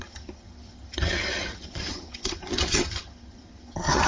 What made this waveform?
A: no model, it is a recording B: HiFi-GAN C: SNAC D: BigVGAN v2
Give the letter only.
B